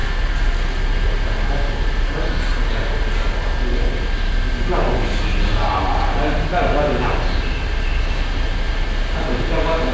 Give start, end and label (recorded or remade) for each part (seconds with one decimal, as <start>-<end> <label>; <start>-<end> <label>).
0.0-9.9 recorded